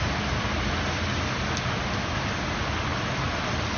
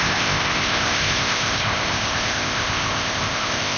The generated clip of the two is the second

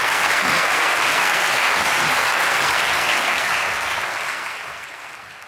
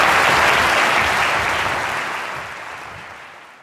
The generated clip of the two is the first